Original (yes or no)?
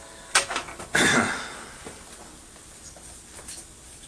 yes